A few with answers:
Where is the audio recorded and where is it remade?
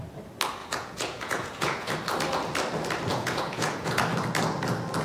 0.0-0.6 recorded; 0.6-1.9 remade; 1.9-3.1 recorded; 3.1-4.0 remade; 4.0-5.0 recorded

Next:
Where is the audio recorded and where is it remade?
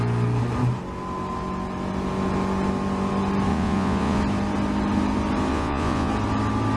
0.0-3.5 recorded; 3.5-4.2 remade; 4.2-5.5 recorded; 5.5-6.1 remade; 6.1-6.8 recorded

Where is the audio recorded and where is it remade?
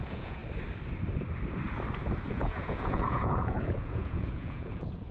0.0-0.4 remade; 0.4-2.3 recorded; 2.3-5.1 remade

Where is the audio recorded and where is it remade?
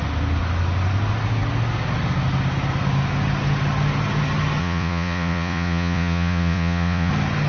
0.0-4.6 recorded; 4.6-7.1 remade; 7.1-7.5 recorded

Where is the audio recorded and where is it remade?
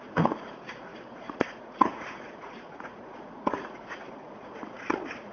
0.0-5.3 remade